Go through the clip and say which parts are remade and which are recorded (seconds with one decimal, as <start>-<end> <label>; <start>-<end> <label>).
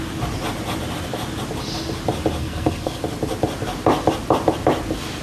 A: 0.0-2.4 recorded; 2.4-3.0 remade; 3.0-5.2 recorded